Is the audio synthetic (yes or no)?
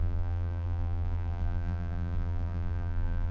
yes